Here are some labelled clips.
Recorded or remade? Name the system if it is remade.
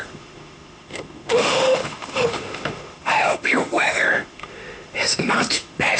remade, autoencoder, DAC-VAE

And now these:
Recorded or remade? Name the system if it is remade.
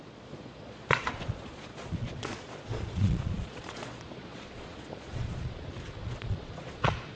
remade, vocoder, Vocos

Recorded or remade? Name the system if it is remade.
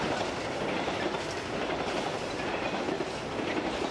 recorded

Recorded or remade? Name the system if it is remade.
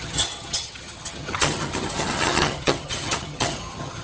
remade, vocoder, HiFi-GAN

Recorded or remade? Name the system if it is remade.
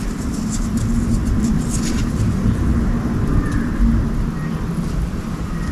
recorded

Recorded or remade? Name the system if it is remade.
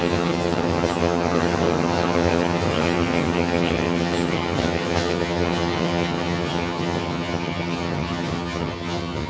remade, vocoder, HiFi-GAN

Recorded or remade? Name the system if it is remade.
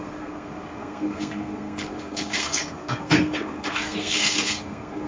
remade, codec, SNAC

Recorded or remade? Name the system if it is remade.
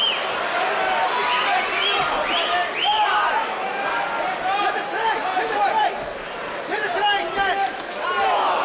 recorded